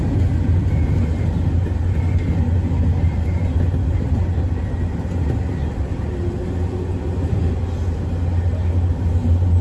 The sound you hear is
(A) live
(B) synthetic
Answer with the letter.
A